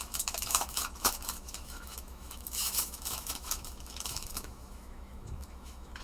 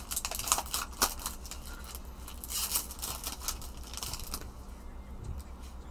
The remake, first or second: first